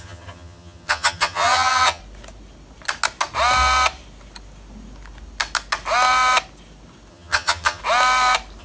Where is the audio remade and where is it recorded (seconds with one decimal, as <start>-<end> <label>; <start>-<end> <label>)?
0.0-2.0 remade; 2.0-7.1 recorded; 7.1-7.8 remade; 7.8-8.6 recorded